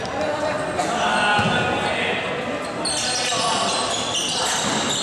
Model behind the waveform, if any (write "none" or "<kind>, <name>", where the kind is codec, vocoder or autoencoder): none